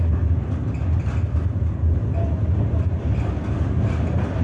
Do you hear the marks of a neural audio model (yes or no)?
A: no